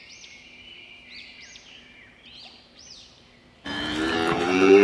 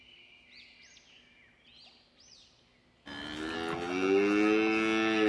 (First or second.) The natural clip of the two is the second